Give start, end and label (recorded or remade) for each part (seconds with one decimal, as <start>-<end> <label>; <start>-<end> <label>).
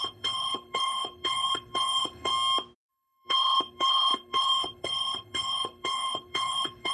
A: 0.0-2.3 remade; 2.3-2.9 recorded; 2.9-6.9 remade